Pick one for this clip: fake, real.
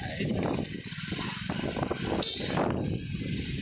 real